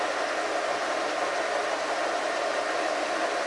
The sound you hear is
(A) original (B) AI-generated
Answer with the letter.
A